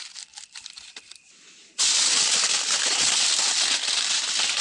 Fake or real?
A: real